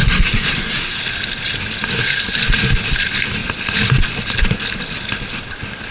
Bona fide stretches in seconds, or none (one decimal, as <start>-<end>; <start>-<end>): 1.0-5.9